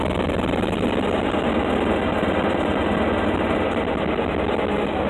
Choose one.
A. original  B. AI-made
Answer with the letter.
A